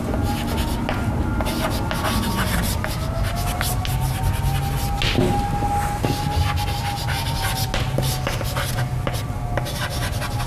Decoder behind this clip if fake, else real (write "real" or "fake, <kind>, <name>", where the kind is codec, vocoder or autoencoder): real